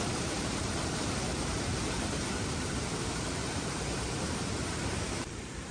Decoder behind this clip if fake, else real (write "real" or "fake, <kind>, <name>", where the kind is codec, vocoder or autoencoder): fake, vocoder, BigVGAN v2